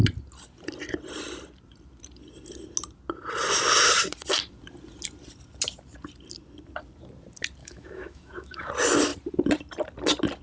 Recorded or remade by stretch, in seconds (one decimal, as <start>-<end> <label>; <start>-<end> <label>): 0.0-7.6 recorded; 7.6-8.7 remade; 8.7-10.4 recorded